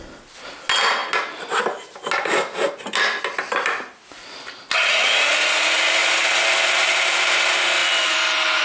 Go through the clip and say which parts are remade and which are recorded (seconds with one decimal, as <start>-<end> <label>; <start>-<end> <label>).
0.0-8.6 recorded